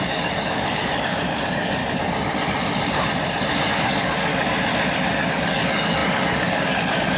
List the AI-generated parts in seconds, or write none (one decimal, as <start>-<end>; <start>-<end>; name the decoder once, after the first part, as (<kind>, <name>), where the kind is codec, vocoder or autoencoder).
0.0-1.8 (codec, DAC); 3.7-4.3; 5.3-7.2